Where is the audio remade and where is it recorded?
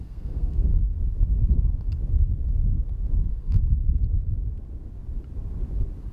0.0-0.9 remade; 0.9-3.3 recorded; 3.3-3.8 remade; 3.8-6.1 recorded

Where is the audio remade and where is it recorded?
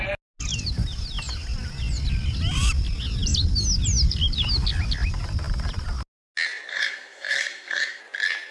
0.0-6.7 recorded; 6.7-8.0 remade; 8.0-8.5 recorded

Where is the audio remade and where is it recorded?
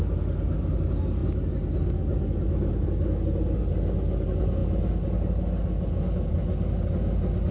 0.0-7.5 recorded